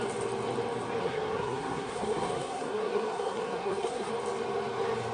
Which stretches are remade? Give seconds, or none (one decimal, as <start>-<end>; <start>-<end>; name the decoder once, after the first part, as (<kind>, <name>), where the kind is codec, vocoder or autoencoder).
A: 1.0-4.1 (codec, SNAC)